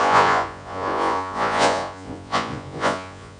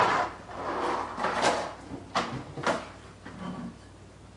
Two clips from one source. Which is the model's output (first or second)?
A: first